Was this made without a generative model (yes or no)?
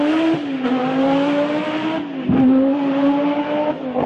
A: yes